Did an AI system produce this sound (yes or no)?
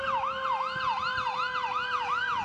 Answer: no